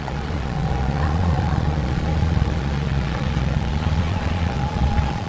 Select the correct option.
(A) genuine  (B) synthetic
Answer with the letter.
B